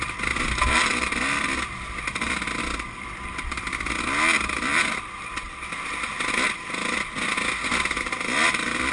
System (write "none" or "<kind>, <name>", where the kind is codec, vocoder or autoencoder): none